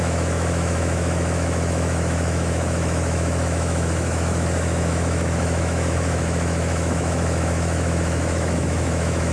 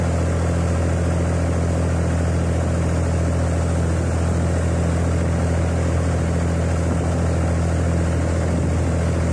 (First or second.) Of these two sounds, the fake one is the first